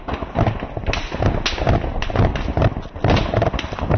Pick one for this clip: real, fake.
real